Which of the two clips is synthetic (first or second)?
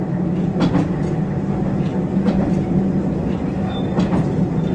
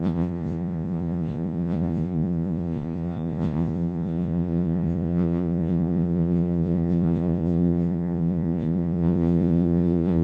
second